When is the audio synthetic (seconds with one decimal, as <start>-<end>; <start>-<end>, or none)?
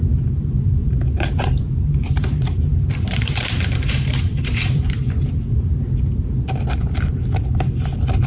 0.8-5.8